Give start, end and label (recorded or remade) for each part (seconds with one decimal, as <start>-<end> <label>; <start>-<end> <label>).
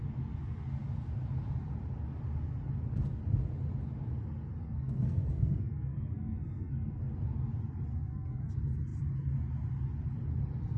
0.0-4.6 recorded; 4.6-7.0 remade; 7.0-7.9 recorded; 7.9-8.5 remade; 8.5-10.8 recorded